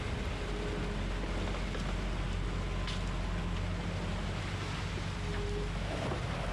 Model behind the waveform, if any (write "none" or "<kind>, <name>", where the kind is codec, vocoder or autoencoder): none